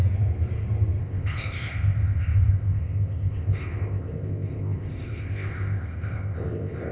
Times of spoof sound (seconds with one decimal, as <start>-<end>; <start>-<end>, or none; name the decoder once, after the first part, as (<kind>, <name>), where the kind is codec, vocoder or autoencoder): 1.0-6.9 (codec, ZipCodec)